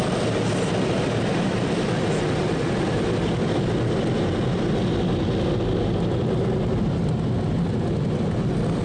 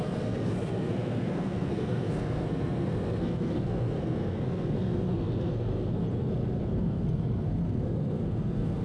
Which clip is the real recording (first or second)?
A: first